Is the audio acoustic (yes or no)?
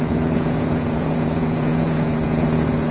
no